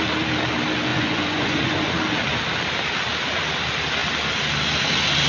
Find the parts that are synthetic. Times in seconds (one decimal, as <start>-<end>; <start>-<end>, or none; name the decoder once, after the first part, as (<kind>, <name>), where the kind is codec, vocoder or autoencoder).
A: 0.9-1.9 (vocoder, Vocos)